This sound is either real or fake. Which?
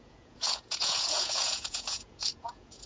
fake